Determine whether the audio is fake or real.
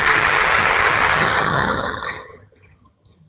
fake